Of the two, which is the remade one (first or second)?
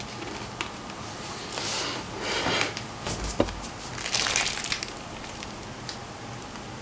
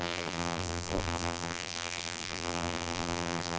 second